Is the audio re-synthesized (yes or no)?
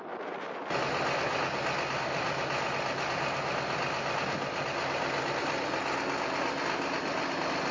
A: no